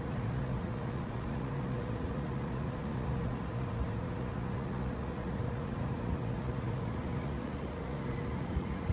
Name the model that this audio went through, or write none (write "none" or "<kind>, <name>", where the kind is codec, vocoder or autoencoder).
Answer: vocoder, Vocos